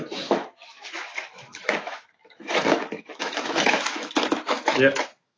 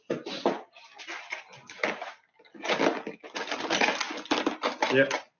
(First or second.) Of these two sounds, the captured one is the second